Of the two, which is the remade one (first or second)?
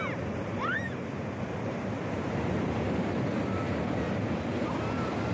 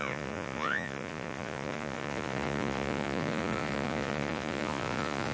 second